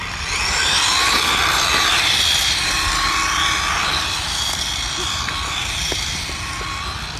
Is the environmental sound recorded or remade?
remade